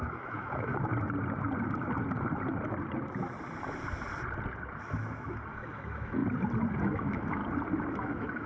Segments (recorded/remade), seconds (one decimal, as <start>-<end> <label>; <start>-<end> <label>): 0.0-0.9 remade; 0.9-4.8 recorded; 4.8-6.2 remade; 6.2-6.8 recorded; 6.8-7.4 remade; 7.4-7.9 recorded; 7.9-8.5 remade